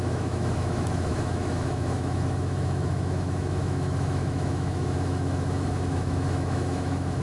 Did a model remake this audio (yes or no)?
yes